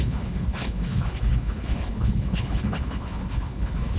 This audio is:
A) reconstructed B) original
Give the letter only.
A